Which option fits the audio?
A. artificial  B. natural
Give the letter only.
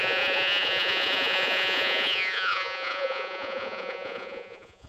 A